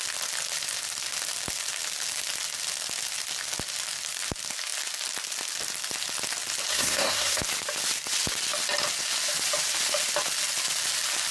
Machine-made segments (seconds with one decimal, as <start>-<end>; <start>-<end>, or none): 6.7-7.4